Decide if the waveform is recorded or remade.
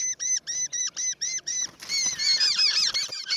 recorded